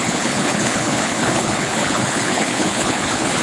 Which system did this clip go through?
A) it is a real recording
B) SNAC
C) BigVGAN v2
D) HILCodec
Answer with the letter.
D